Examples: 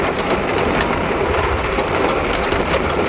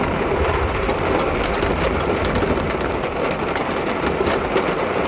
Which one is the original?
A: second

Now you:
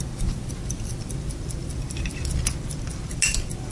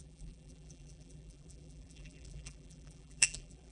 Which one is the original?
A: first